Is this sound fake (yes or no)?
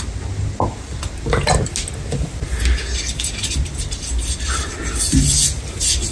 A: no